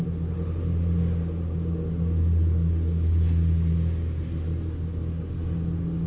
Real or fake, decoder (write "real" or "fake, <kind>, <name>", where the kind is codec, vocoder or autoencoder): real